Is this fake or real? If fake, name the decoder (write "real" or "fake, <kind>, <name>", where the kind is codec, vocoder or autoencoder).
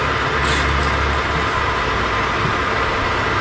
real